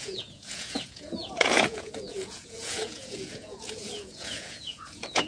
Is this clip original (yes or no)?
no